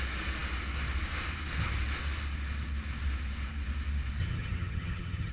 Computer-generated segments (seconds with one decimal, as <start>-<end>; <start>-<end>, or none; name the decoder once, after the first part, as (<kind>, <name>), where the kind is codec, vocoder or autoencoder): 4.2-5.3 (vocoder, HiFi-GAN)